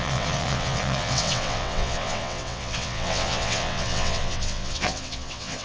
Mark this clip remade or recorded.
remade